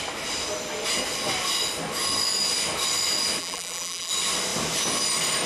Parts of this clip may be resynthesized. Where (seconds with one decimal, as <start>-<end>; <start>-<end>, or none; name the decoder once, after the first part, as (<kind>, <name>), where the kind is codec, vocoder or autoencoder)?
3.4-4.1 (vocoder, BigVGAN v2)